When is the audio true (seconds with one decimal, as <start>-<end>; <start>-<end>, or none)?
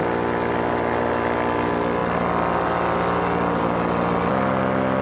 0.0-5.0